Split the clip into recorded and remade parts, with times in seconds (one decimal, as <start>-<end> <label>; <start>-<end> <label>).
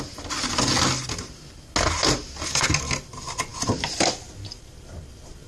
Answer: 0.0-5.5 recorded